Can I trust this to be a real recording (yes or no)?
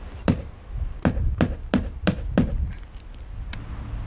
yes